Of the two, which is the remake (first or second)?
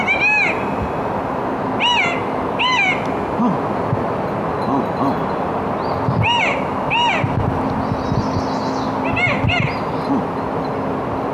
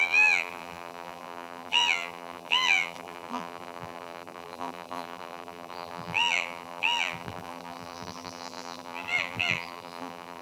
second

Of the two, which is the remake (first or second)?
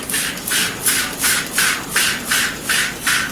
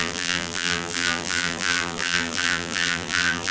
second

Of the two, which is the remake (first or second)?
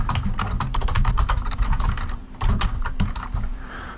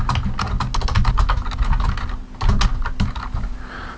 first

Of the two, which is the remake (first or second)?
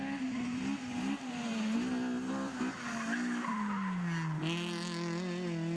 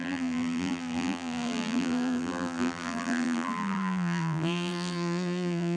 second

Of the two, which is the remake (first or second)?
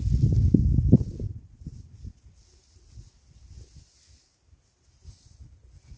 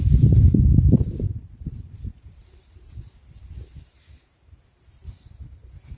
second